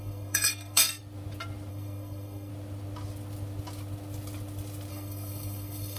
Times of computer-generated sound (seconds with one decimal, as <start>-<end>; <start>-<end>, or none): 0.0-1.0; 1.7-2.5; 4.9-6.0

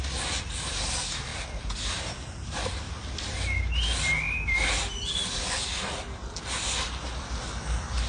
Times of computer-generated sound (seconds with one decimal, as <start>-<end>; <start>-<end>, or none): none

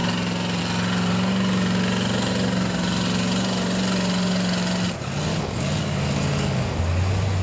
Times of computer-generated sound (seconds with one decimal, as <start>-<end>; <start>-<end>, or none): 5.3-6.8